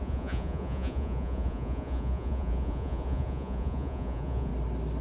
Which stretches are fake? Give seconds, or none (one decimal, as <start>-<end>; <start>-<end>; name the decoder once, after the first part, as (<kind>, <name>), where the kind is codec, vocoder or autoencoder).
0.0-4.5 (vocoder, Vocos)